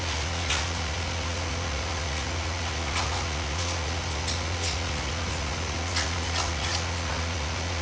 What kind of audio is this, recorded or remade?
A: remade